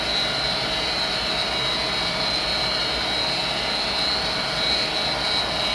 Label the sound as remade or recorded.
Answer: recorded